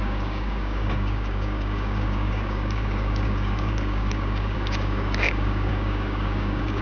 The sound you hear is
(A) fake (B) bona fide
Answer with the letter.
A